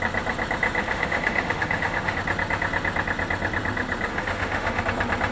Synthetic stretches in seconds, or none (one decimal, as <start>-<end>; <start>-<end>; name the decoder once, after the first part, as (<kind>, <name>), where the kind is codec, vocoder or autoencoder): 0.8-2.2 (autoencoder, DAC-VAE); 4.1-4.8